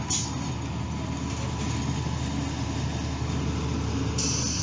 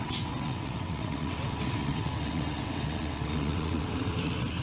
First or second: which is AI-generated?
second